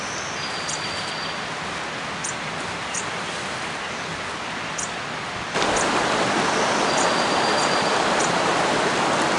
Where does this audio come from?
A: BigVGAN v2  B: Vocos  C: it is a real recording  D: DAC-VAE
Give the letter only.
C